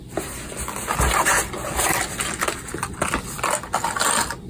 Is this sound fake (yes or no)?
no